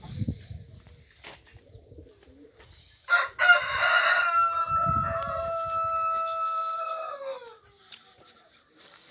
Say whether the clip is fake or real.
real